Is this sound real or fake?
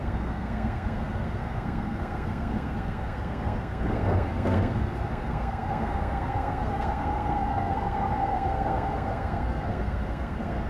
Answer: fake